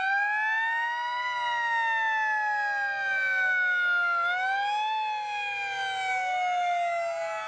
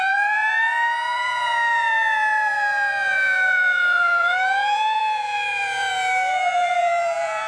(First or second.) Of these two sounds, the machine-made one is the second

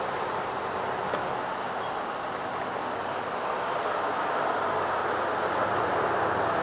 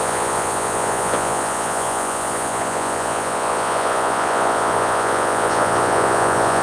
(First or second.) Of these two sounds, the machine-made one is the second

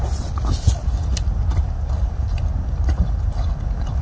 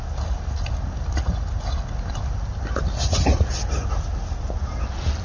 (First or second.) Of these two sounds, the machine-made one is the first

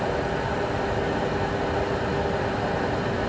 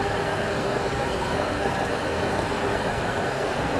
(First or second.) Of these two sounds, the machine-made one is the second